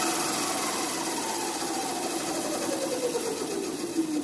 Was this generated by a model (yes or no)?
no